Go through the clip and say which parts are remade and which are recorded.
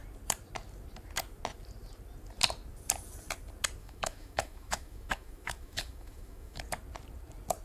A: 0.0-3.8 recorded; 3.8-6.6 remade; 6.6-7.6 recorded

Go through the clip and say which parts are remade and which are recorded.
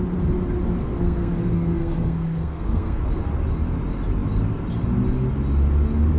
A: 0.0-0.8 recorded; 0.8-3.0 remade; 3.0-6.2 recorded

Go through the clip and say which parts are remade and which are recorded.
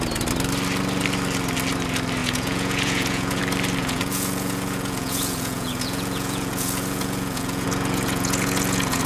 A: 0.0-2.2 recorded; 2.2-3.4 remade; 3.4-3.8 recorded; 3.8-9.1 remade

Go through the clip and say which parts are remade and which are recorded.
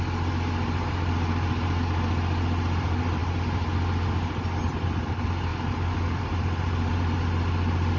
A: 0.0-8.0 recorded